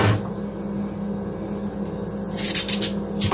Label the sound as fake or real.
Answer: real